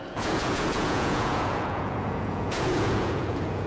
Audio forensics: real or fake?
fake